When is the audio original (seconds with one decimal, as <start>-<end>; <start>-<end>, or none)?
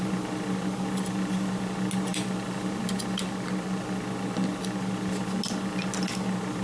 0.0-6.6